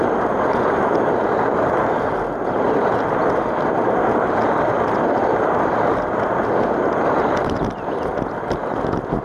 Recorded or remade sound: recorded